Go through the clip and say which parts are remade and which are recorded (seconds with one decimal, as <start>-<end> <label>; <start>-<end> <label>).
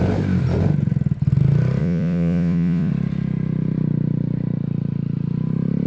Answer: 0.0-1.8 recorded; 1.8-2.9 remade; 2.9-5.9 recorded